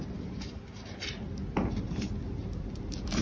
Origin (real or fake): real